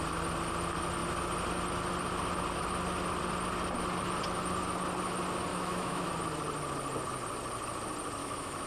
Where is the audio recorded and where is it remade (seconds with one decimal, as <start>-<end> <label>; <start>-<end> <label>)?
0.0-5.5 recorded; 5.5-6.1 remade; 6.1-8.2 recorded; 8.2-8.7 remade